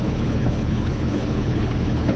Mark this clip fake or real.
fake